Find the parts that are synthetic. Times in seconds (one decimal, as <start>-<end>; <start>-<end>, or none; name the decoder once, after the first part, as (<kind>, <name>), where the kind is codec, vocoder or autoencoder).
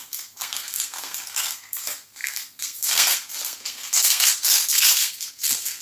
0.0-5.8 (codec, SNAC)